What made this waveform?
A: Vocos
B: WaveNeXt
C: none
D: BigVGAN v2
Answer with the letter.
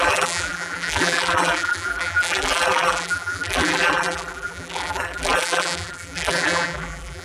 D